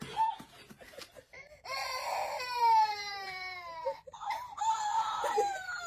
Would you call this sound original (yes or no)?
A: no